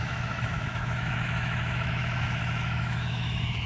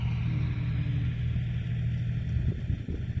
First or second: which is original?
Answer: second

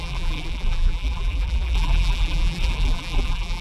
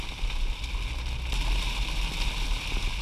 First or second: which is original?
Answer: second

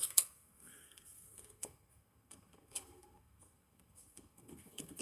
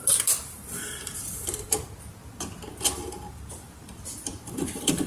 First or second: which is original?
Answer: second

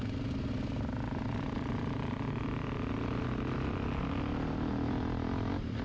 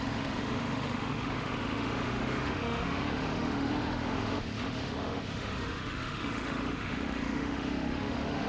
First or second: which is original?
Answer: first